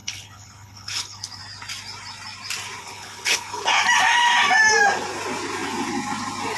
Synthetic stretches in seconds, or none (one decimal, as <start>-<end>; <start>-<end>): 0.0-1.4; 2.8-3.8